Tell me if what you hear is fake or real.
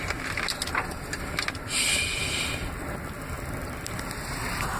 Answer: real